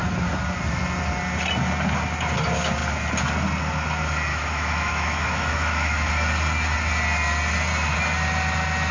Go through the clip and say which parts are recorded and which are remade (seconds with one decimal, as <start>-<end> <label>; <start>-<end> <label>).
0.0-4.3 recorded; 4.3-6.1 remade; 6.1-8.9 recorded

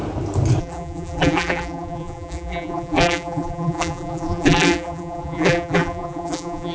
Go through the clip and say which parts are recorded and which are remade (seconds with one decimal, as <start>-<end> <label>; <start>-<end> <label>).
0.0-0.6 recorded; 0.6-6.7 remade

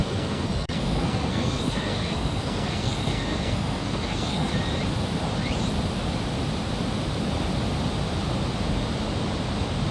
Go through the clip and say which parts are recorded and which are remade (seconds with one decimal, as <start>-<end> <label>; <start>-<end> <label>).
0.0-4.5 remade; 4.5-9.9 recorded